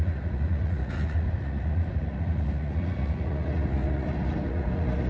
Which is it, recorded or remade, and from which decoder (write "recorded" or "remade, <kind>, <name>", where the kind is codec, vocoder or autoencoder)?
remade, vocoder, Vocos